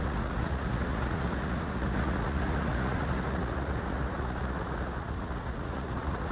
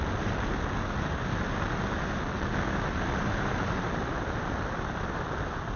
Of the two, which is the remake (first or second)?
first